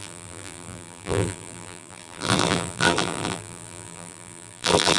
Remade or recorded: remade